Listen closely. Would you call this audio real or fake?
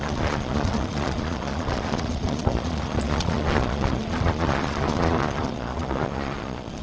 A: fake